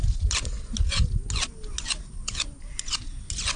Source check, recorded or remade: recorded